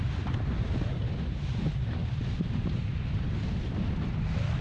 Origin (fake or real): real